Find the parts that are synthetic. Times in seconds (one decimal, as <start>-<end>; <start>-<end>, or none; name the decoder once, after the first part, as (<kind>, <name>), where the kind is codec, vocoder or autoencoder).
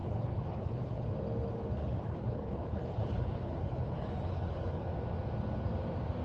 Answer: 0.0-1.1 (codec, HILCodec); 1.8-4.8